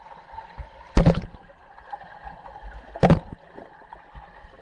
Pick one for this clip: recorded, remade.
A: recorded